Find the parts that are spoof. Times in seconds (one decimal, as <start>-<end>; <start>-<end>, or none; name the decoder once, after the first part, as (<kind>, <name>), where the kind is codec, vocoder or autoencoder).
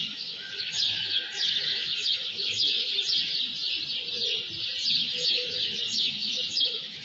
0.0-2.9 (autoencoder, DAC-VAE); 5.0-7.0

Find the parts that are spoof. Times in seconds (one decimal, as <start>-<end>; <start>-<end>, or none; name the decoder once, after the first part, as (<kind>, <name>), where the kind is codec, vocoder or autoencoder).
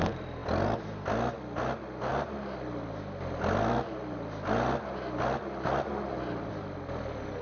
none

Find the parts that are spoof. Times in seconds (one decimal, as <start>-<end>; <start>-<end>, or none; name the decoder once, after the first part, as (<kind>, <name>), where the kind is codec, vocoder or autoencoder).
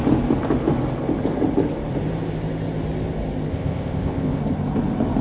3.5-4.4 (codec, ZipCodec)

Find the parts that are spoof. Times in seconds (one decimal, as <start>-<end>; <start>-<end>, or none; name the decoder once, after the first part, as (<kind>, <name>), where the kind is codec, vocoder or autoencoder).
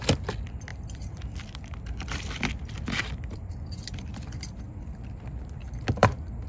0.7-4.6 (vocoder, BigVGAN v2)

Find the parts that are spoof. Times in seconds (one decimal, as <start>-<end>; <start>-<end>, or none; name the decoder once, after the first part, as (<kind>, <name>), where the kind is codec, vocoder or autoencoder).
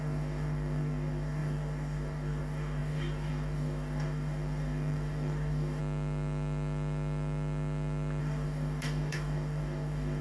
0.0-5.8 (codec, DAC); 8.2-10.2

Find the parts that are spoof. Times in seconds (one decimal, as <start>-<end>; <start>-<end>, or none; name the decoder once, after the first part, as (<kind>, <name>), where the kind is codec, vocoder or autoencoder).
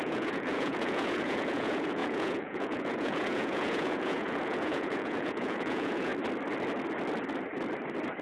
0.0-6.1 (vocoder, Vocos)